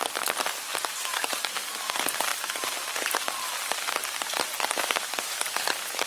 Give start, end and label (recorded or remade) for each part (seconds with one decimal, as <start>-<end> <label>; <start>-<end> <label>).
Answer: 0.0-6.1 remade